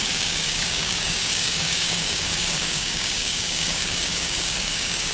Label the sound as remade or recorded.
remade